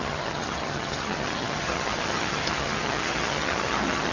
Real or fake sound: fake